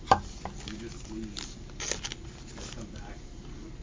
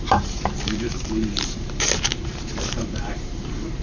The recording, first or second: first